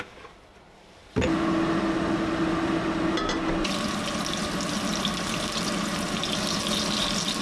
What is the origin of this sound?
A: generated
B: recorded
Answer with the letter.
B